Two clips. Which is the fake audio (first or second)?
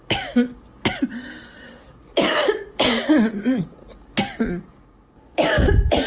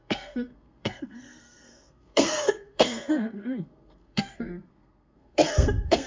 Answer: second